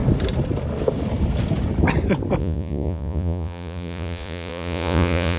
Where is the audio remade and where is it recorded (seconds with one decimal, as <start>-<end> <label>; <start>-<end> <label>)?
0.0-2.4 recorded; 2.4-5.4 remade